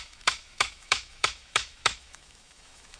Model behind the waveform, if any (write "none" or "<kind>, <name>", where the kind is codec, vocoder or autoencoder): autoencoder, DAC-VAE